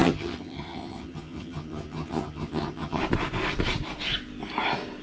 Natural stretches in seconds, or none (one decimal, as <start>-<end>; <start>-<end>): 3.0-5.0